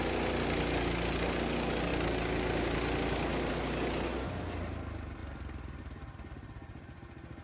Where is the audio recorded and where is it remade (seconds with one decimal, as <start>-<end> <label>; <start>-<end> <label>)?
0.0-7.4 recorded